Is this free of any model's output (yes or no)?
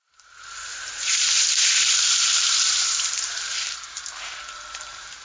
no